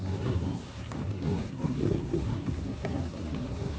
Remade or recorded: remade